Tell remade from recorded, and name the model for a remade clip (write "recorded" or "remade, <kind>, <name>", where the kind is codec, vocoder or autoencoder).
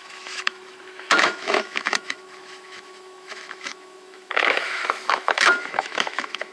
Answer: remade, autoencoder, DAC-VAE